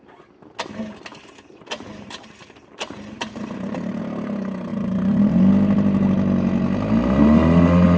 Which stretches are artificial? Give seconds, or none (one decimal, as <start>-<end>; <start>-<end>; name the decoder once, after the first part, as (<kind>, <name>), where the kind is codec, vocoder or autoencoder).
1.1-4.0 (vocoder, BigVGAN v2); 4.7-5.5